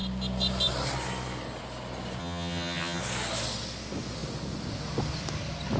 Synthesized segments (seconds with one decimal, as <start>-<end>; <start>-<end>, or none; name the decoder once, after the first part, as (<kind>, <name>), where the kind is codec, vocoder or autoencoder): 2.2-3.0 (vocoder, HiFi-GAN)

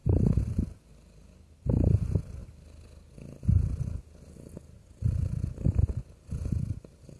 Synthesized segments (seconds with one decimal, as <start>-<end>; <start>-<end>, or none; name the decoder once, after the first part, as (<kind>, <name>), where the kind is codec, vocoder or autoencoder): none

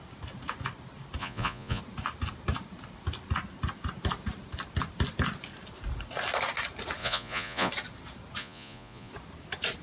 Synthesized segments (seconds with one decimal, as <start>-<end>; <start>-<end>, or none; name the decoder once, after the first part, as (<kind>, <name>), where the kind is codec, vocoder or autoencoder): 1.2-1.8 (vocoder, Vocos); 7.0-7.7; 8.4-9.1

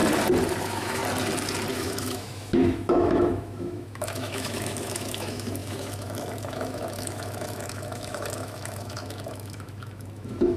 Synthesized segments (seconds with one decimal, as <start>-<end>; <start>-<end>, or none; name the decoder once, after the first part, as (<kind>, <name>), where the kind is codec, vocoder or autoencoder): 0.6-1.0 (autoencoder, DAC-VAE); 1.7-10.6

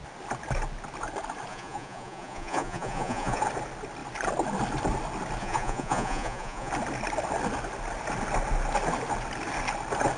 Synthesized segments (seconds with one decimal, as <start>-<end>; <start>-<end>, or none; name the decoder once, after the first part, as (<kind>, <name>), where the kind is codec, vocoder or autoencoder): 1.5-3.4 (vocoder, Vocos); 5.4-6.7

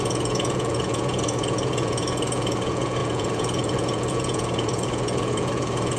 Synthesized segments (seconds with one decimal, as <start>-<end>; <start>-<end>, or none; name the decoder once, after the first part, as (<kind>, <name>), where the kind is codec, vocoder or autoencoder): 0.0-6.0 (vocoder, Vocos)